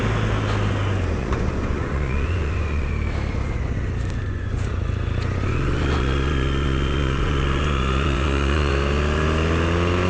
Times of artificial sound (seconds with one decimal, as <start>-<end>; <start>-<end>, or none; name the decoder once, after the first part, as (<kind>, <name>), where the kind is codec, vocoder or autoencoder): 1.2-2.9 (vocoder, Vocos); 4.2-8.7

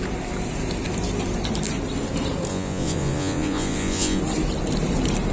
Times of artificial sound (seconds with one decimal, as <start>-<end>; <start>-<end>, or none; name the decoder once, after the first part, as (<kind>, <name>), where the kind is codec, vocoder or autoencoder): 2.5-4.2 (vocoder, Vocos)

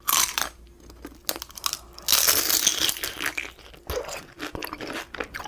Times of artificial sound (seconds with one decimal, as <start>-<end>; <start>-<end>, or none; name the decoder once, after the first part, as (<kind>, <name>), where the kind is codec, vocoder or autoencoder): none

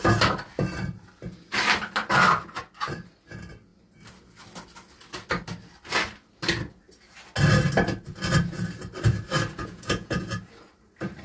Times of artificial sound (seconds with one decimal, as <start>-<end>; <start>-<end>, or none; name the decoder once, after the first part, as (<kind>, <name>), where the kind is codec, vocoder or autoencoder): 9.6-10.2 (vocoder, Vocos)

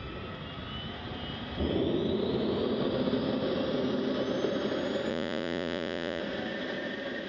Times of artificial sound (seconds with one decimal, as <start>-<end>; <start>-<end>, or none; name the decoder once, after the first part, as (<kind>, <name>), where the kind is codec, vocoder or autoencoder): 5.1-6.2 (vocoder, Vocos)

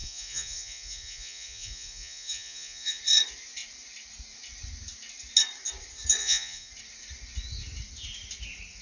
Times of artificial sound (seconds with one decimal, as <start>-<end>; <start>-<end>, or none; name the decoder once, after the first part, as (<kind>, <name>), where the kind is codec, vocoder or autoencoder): 0.0-3.0 (vocoder, Vocos); 6.2-6.7

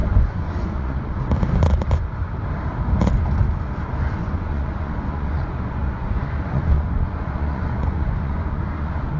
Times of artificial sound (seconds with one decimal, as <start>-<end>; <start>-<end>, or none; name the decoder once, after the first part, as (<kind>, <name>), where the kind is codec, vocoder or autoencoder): 0.0-1.2 (vocoder, Vocos); 4.2-9.2